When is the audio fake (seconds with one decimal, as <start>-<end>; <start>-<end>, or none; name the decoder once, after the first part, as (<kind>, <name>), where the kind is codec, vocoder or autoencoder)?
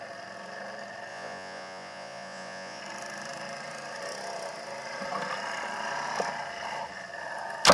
1.1-2.8 (vocoder, Vocos)